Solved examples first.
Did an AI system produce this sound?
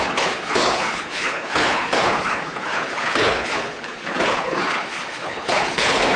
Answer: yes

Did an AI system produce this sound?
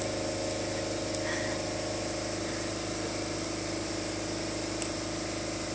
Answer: no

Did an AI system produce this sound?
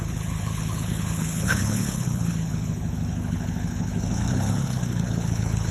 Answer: yes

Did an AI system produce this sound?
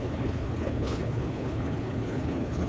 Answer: yes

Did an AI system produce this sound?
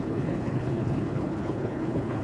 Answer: yes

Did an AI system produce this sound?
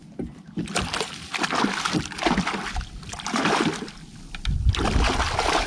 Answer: no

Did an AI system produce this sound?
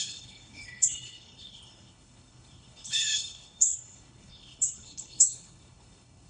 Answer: yes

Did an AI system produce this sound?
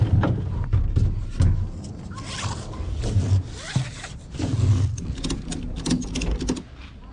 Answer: no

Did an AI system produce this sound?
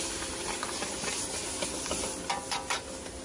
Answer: no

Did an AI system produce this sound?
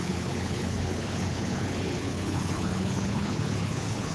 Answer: yes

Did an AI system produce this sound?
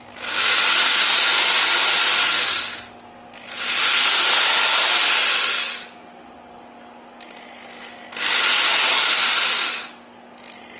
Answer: no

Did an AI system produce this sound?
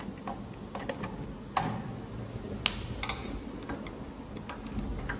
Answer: no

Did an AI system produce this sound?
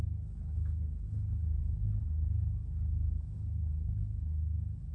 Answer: yes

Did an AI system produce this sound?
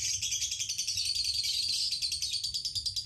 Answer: no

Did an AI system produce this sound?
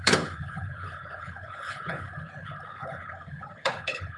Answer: yes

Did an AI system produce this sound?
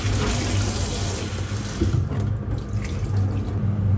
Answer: no